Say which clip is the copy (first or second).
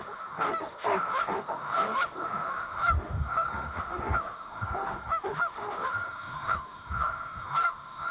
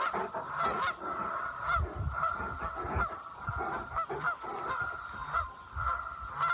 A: first